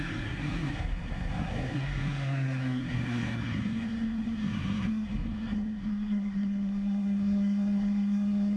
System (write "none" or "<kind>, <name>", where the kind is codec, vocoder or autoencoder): codec, SNAC